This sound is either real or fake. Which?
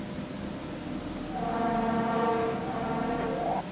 real